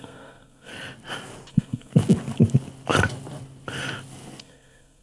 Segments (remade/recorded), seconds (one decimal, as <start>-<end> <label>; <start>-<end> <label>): 0.0-0.7 remade; 0.7-1.5 recorded; 1.5-1.9 remade; 1.9-4.4 recorded; 4.4-5.0 remade